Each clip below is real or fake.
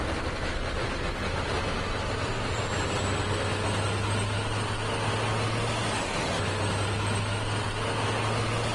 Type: real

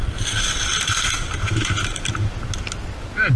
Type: real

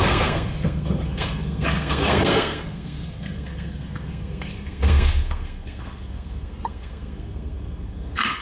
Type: fake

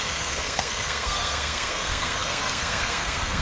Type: fake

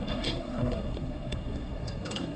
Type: fake